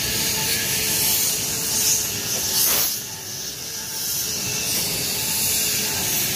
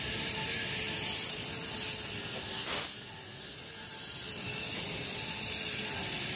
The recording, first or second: first